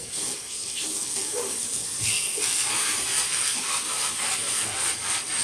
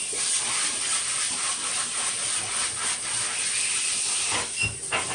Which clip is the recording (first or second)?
second